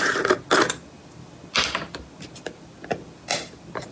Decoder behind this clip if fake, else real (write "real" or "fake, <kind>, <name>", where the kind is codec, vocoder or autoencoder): real